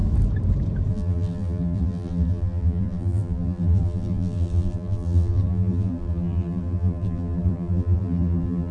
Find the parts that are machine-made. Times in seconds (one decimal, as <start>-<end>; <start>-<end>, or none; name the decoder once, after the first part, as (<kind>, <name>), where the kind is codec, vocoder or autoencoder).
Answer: 0.9-8.7 (vocoder, BigVGAN v2)